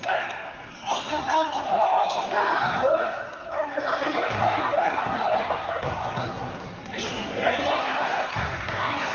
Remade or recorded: remade